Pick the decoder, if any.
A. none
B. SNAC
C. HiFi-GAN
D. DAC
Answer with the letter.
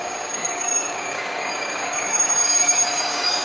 D